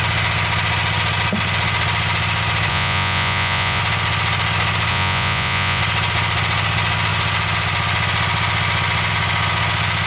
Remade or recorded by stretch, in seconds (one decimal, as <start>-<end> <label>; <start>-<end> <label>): 0.0-2.7 recorded; 2.7-3.8 remade; 3.8-4.9 recorded; 4.9-5.8 remade; 5.8-10.1 recorded